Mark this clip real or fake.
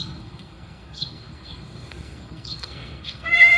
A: fake